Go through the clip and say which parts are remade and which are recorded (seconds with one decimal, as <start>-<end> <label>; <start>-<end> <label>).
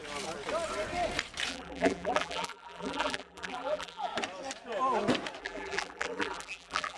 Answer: 0.0-1.5 recorded; 1.5-4.1 remade; 4.1-5.4 recorded; 5.4-7.0 remade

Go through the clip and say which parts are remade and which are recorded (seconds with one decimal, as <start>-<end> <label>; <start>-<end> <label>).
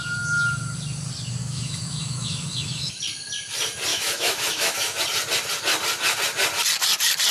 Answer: 0.0-1.4 recorded; 1.4-3.0 remade; 3.0-3.9 recorded; 3.9-5.0 remade; 5.0-7.3 recorded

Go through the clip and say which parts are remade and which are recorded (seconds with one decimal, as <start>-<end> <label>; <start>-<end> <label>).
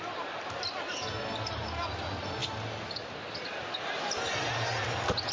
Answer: 0.0-5.3 recorded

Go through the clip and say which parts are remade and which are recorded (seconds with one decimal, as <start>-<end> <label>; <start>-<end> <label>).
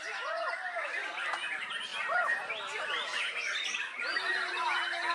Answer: 0.0-5.1 recorded